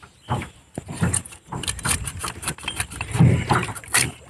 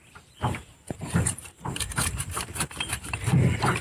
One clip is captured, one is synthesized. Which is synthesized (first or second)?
second